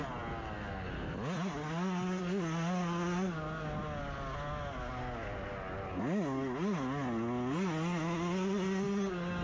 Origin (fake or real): real